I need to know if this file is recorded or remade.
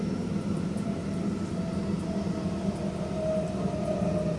recorded